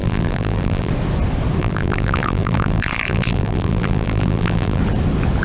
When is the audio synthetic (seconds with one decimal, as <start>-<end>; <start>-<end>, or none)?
0.0-0.9; 1.6-4.8